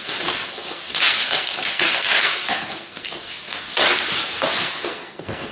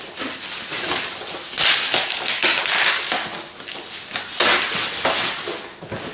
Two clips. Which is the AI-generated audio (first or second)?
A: first